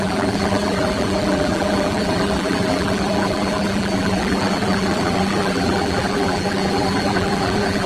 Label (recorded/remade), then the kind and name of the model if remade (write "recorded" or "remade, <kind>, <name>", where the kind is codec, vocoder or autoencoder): remade, vocoder, BigVGAN v2